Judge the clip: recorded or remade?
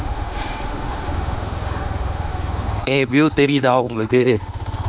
remade